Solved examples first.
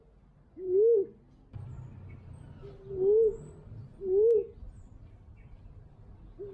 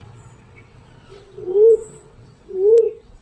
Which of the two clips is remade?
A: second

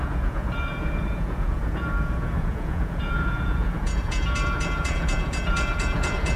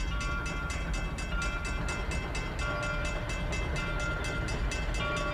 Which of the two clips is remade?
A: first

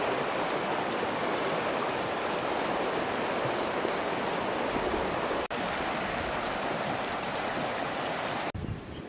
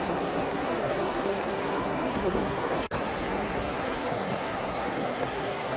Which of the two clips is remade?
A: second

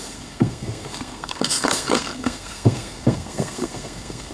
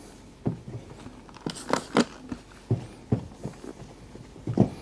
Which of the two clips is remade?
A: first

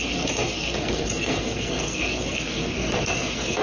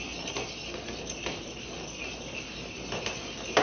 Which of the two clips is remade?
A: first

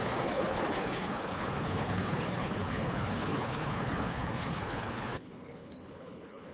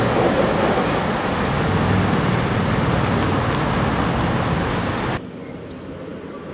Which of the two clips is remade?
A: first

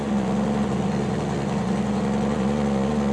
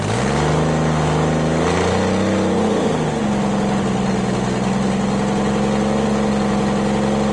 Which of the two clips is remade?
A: first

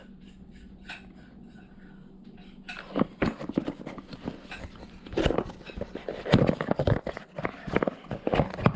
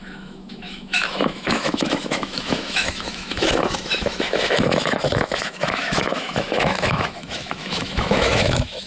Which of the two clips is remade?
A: second